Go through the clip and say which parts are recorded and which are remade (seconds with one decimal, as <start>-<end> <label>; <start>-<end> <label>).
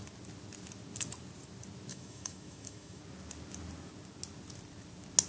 0.0-1.9 recorded; 1.9-3.0 remade; 3.0-5.3 recorded